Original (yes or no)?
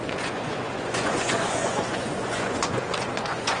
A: no